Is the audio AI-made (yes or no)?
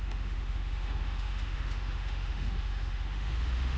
yes